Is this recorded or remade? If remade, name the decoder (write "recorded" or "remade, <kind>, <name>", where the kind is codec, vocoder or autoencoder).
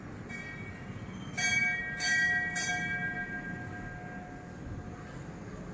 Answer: recorded